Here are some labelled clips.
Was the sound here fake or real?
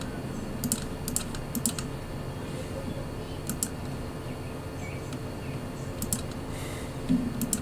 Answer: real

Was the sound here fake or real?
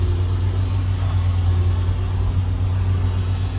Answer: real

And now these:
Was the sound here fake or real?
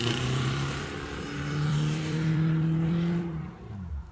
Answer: fake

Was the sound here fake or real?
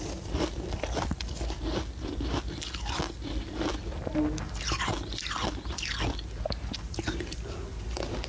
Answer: real